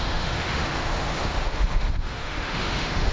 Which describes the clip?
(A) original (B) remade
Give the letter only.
B